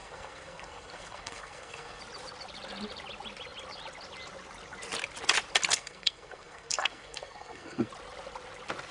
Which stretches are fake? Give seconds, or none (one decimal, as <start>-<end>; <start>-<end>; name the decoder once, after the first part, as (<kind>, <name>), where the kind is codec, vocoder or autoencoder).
0.0-2.0 (codec, SNAC); 5.7-7.9